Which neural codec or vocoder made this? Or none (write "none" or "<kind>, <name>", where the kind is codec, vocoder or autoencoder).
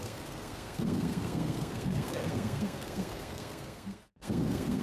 codec, SNAC